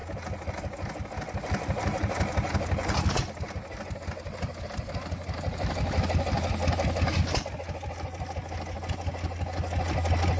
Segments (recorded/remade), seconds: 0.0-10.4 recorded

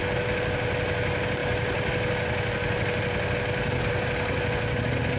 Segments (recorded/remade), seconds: 0.0-5.2 recorded

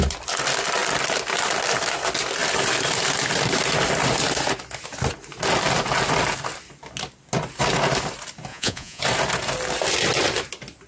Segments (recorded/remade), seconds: 0.0-8.5 recorded; 8.5-9.0 remade; 9.0-10.9 recorded

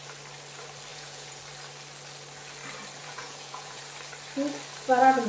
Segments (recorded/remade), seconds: 0.0-0.9 recorded; 0.9-1.4 remade; 1.4-3.0 recorded; 3.0-3.8 remade; 3.8-5.3 recorded

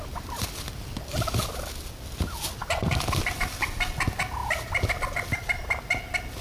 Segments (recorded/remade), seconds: 0.0-6.4 recorded

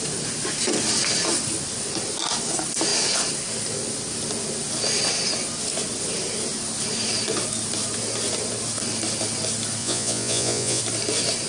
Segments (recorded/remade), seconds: 0.0-9.8 recorded; 9.8-10.8 remade; 10.8-11.5 recorded

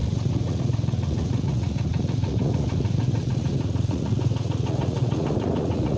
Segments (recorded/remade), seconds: 0.0-6.0 remade

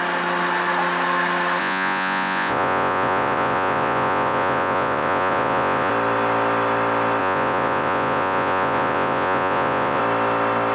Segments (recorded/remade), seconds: 0.0-1.6 recorded; 1.6-5.9 remade; 5.9-7.2 recorded; 7.2-10.0 remade; 10.0-10.7 recorded